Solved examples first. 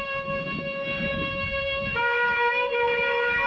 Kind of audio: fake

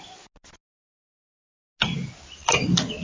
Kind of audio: real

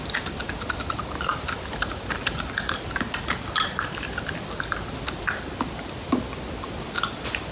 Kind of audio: real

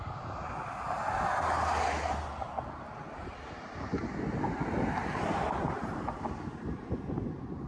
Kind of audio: real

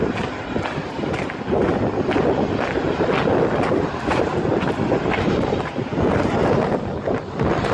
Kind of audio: real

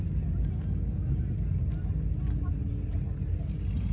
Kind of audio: real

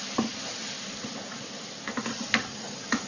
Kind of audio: fake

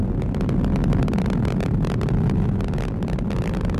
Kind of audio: real